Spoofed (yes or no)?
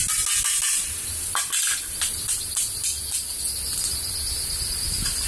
no